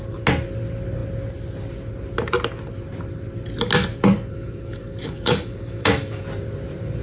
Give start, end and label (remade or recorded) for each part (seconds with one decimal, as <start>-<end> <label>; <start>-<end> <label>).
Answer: 0.0-4.0 recorded; 4.0-6.2 remade; 6.2-7.0 recorded